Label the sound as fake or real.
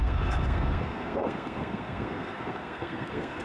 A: fake